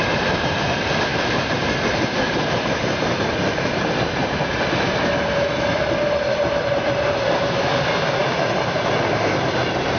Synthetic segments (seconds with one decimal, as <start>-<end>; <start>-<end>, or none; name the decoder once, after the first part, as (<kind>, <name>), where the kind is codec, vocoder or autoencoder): 1.1-5.0 (vocoder, BigVGAN v2)